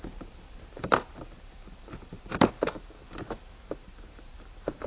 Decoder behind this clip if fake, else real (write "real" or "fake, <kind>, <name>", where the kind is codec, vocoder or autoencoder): fake, vocoder, BigVGAN v2